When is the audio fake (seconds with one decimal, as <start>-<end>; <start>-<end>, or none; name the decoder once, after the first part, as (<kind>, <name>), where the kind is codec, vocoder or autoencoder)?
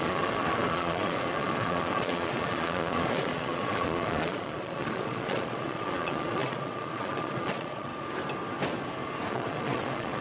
0.0-7.9 (vocoder, Vocos); 9.3-10.2